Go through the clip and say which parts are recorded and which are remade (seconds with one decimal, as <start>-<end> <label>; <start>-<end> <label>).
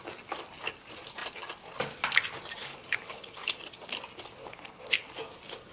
0.0-2.6 recorded; 2.6-3.6 remade; 3.6-4.4 recorded; 4.4-5.1 remade; 5.1-5.7 recorded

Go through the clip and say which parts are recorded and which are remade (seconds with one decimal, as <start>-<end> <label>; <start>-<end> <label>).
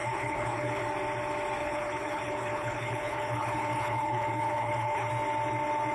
0.0-0.8 remade; 0.8-1.6 recorded; 1.6-5.1 remade; 5.1-5.9 recorded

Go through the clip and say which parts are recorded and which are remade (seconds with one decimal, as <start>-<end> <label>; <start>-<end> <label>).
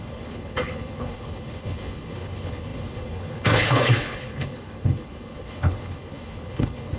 0.0-7.0 remade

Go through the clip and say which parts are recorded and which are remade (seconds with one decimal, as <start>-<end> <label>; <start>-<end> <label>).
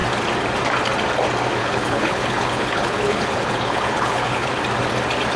0.0-1.6 recorded; 1.6-4.5 remade; 4.5-5.4 recorded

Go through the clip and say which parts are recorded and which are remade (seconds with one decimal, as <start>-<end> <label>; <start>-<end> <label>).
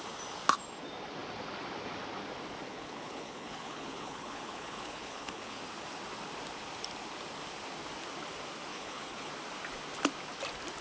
0.0-2.7 recorded; 2.7-5.6 remade; 5.6-8.7 recorded; 8.7-9.3 remade; 9.3-10.8 recorded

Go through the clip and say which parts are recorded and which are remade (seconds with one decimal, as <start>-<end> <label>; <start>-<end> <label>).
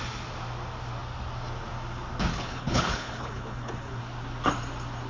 0.0-2.3 recorded; 2.3-4.0 remade; 4.0-5.1 recorded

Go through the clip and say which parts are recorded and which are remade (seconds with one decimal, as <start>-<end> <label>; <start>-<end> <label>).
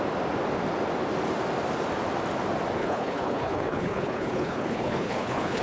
0.0-2.8 recorded; 2.8-5.6 remade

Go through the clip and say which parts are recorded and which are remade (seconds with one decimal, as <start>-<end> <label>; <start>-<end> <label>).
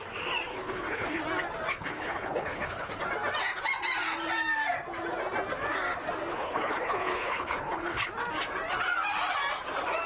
0.0-0.5 recorded; 0.5-1.2 remade; 1.2-1.7 recorded; 1.7-2.9 remade; 2.9-6.3 recorded; 6.3-8.1 remade; 8.1-10.1 recorded